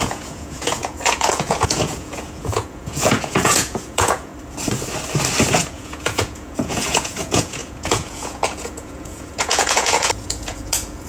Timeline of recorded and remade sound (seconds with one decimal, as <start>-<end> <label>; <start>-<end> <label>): 0.0-4.3 remade; 4.3-5.5 recorded; 5.5-11.1 remade